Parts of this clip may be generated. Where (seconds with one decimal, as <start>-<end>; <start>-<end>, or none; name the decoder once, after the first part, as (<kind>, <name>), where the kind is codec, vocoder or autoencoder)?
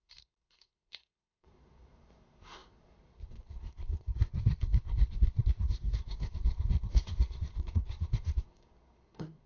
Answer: 0.0-9.5 (codec, SNAC)